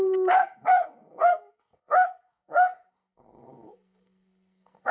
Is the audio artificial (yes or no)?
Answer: yes